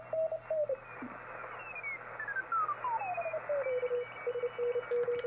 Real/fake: real